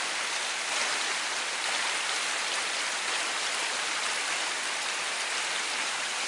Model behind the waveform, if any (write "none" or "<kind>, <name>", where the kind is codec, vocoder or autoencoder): none